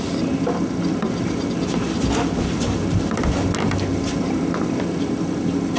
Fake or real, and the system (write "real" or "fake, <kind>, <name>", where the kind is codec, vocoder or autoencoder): real